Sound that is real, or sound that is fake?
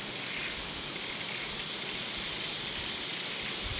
real